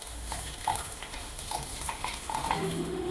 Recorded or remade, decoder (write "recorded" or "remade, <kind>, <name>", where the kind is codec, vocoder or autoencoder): remade, autoencoder, DAC-VAE